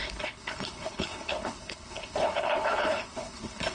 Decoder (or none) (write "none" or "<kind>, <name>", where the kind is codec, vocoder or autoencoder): codec, HILCodec